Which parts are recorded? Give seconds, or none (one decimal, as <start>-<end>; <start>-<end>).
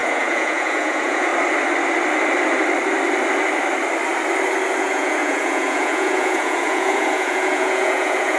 1.3-4.8